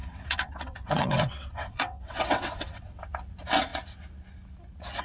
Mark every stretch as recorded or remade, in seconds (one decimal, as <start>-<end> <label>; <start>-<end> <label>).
0.0-3.0 remade; 3.0-5.0 recorded